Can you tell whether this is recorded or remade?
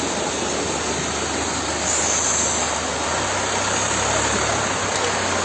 recorded